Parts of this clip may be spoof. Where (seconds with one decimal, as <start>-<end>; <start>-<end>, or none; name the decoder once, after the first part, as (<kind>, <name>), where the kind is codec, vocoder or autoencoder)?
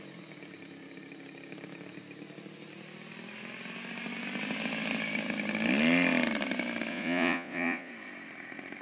6.9-7.9 (vocoder, Vocos)